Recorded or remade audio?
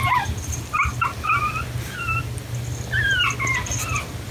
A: recorded